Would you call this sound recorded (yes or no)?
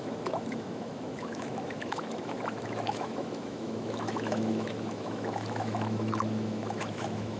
no